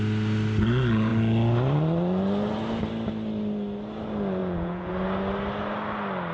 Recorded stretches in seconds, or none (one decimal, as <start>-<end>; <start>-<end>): 0.0-4.4; 4.9-6.3